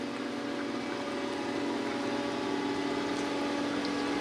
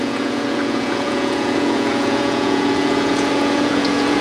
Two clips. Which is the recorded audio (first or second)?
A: first